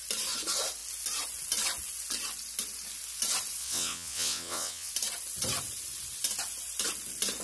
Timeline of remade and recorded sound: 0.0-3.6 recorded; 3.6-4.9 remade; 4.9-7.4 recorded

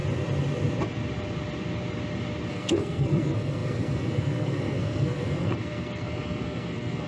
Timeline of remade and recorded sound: 0.0-2.5 recorded; 2.5-7.1 remade

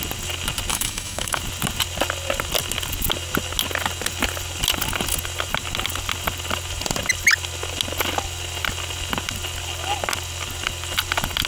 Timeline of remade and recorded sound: 0.0-0.7 recorded; 0.7-1.4 remade; 1.4-11.5 recorded

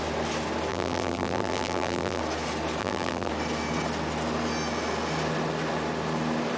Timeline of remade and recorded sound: 0.0-0.7 recorded; 0.7-2.2 remade; 2.2-2.8 recorded; 2.8-3.3 remade; 3.3-6.6 recorded

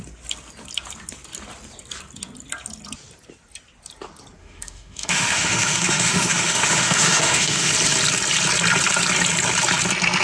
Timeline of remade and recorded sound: 0.0-4.4 recorded; 4.4-7.7 remade; 7.7-10.2 recorded

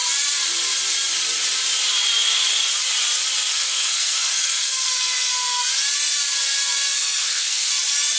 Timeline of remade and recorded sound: 0.0-3.5 recorded; 3.5-5.7 remade; 5.7-6.9 recorded; 6.9-7.7 remade; 7.7-8.2 recorded

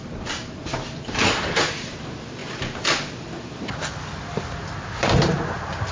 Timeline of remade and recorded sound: 0.0-2.4 remade; 2.4-4.8 recorded; 4.8-5.9 remade